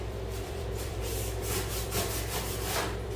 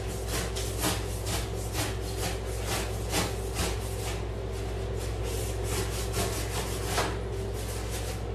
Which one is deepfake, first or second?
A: first